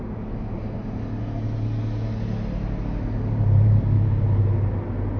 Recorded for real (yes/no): yes